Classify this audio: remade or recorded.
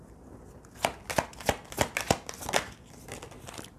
recorded